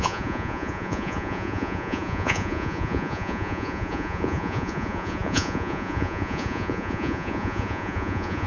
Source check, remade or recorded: remade